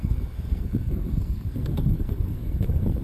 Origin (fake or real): fake